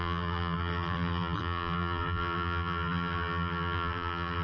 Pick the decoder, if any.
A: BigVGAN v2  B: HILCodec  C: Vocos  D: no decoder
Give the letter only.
A